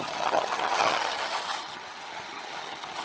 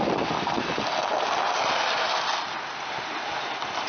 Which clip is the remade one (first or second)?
first